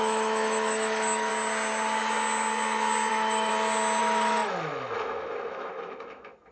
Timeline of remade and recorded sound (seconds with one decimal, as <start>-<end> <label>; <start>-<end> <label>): 0.0-1.3 remade; 1.3-3.1 recorded; 3.1-3.5 remade; 3.5-4.0 recorded; 4.0-6.5 remade